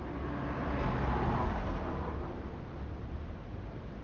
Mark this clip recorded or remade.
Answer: recorded